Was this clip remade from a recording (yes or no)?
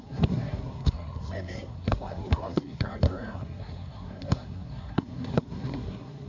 yes